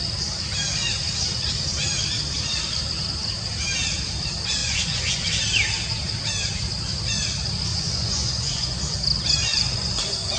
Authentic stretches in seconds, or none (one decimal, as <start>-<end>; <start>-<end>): 0.0-4.6; 5.3-7.7; 8.8-9.5

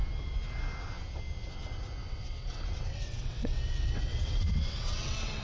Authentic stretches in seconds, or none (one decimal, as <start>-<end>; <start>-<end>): 0.0-2.0

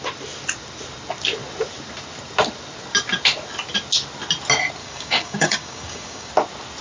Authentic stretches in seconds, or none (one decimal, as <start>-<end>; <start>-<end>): 0.0-4.8; 6.3-6.8

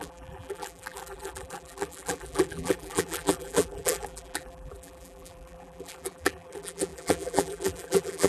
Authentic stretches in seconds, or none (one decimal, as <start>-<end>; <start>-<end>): none

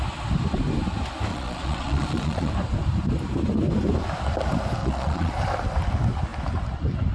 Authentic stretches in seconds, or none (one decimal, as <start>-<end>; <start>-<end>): 0.0-1.3; 2.5-4.8; 5.3-7.1

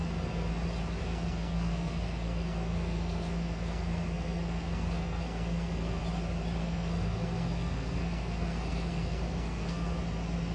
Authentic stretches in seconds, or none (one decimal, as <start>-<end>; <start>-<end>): 0.5-1.0; 6.0-6.6; 10.0-10.5

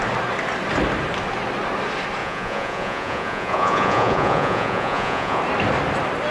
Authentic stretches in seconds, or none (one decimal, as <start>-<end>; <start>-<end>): 0.0-2.2; 5.4-6.3

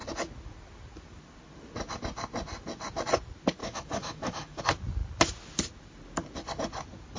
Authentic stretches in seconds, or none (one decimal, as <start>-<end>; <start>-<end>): 0.0-3.6; 4.6-7.2